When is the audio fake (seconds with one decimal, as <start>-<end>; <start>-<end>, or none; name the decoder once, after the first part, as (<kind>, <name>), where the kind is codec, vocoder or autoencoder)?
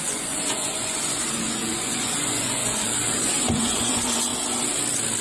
0.0-4.3 (vocoder, Vocos)